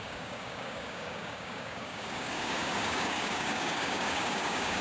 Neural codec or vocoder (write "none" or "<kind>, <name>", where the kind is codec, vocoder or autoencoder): codec, DAC